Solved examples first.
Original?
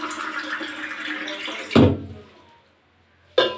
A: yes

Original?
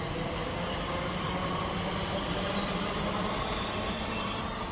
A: yes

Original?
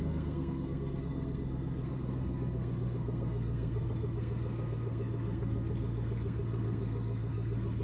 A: no